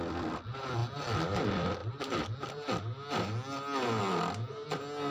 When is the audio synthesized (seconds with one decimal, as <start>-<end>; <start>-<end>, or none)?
none